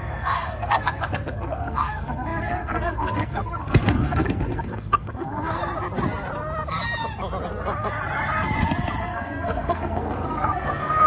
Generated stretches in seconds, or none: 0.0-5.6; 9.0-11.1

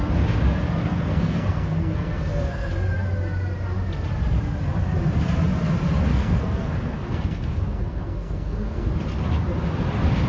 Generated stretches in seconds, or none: 0.8-2.7; 6.1-8.9

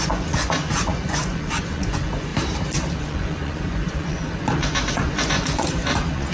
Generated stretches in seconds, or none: 0.0-2.3; 3.0-6.3

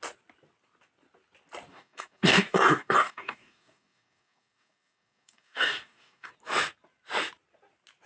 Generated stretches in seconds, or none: 1.7-6.3

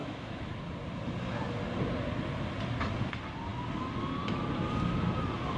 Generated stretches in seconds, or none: 0.0-0.5

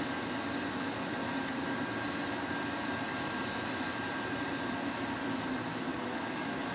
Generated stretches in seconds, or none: 5.9-6.7